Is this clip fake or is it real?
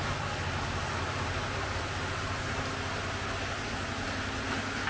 real